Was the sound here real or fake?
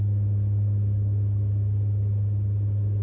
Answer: real